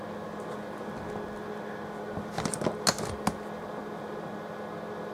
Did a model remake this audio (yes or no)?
no